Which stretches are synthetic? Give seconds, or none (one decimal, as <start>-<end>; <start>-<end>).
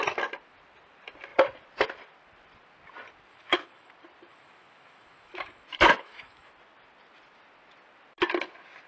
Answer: 3.3-3.9; 4.3-6.5